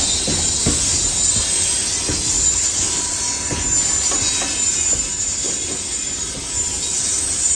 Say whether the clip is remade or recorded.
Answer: recorded